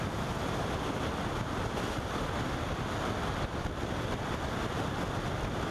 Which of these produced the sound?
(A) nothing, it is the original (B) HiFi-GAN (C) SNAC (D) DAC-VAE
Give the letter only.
A